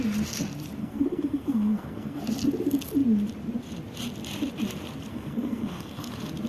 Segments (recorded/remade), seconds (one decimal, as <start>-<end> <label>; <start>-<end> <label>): 0.0-0.8 recorded; 0.8-2.2 remade; 2.2-5.1 recorded; 5.1-6.1 remade; 6.1-6.5 recorded